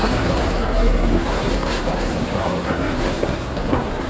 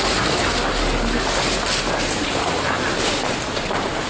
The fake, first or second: first